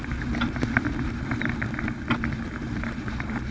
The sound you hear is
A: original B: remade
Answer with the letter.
A